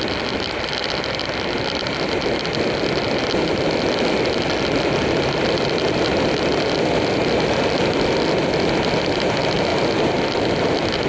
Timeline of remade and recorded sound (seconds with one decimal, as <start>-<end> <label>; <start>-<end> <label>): 0.0-11.1 recorded

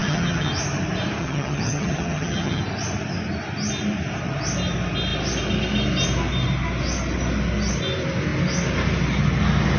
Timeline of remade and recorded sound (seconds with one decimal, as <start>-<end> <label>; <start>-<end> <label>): 0.0-0.5 remade; 0.5-1.2 recorded; 1.2-2.6 remade; 2.6-9.8 recorded

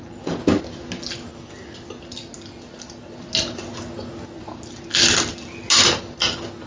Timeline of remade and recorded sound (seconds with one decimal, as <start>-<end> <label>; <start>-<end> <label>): 0.0-6.7 recorded

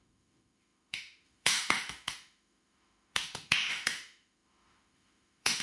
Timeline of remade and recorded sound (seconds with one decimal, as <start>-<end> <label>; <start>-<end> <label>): 0.0-5.6 remade